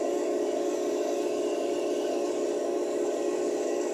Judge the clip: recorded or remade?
remade